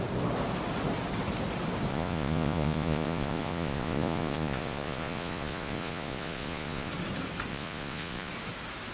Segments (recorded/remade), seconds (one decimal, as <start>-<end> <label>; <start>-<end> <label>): 0.0-1.9 recorded; 1.9-6.9 remade; 6.9-7.5 recorded; 7.5-8.3 remade; 8.3-8.9 recorded